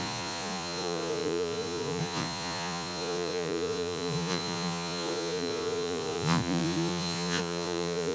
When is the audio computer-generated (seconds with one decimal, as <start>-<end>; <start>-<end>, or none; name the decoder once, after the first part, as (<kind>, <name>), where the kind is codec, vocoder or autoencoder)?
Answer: 0.0-8.1 (vocoder, Vocos)